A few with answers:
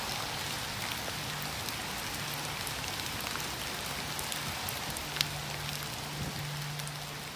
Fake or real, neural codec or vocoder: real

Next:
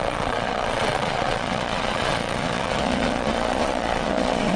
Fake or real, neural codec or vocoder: fake, vocoder, Vocos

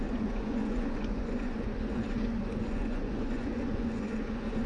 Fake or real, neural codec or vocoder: fake, vocoder, Vocos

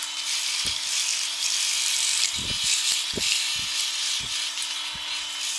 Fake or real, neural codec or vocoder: real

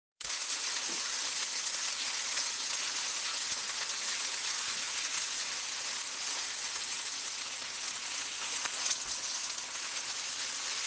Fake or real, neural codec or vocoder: fake, vocoder, Vocos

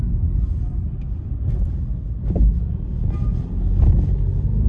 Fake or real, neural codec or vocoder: real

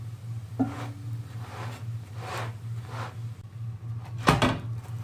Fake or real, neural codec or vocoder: real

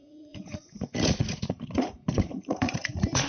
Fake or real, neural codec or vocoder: fake, vocoder, Vocos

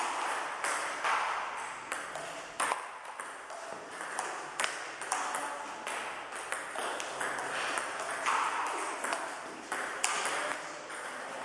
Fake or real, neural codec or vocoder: real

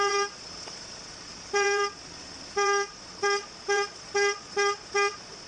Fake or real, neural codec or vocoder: fake, vocoder, Vocos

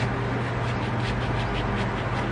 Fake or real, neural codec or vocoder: real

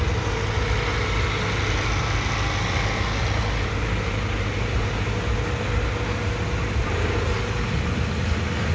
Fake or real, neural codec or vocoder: real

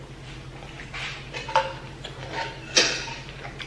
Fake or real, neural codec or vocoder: real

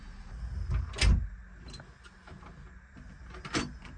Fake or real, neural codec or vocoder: real